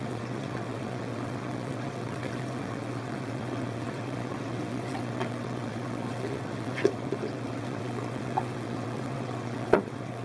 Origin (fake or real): fake